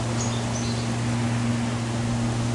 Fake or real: real